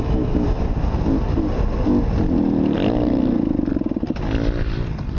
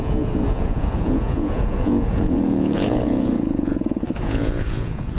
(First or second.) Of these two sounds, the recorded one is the first